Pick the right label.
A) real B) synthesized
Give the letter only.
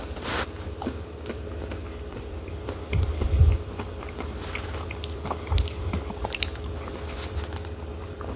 B